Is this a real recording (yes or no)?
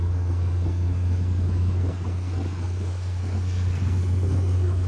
no